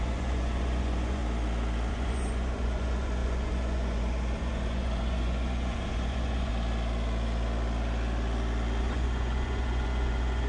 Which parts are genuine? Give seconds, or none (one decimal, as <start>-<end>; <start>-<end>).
1.2-1.9; 6.5-8.8